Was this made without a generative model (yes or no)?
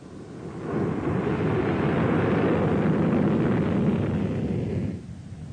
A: yes